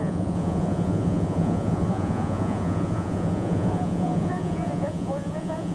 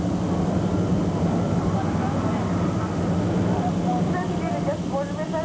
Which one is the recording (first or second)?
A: second